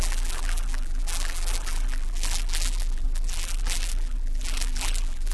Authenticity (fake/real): fake